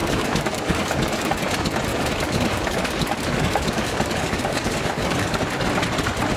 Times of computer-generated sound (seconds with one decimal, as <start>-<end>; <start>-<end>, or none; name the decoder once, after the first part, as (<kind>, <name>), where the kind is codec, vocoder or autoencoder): 0.0-1.3 (codec, DAC); 1.9-5.4